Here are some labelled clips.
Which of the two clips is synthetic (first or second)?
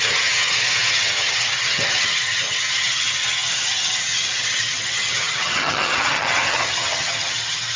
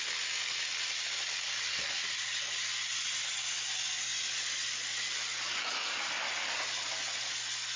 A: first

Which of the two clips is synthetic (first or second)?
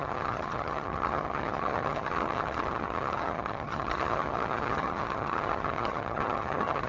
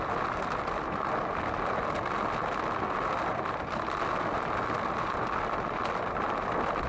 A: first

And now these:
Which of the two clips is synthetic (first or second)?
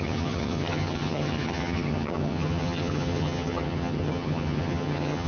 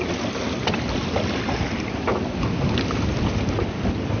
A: first